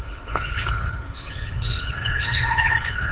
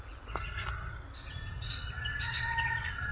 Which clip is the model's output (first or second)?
first